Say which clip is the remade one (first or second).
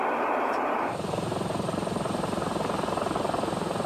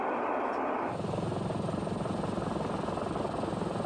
first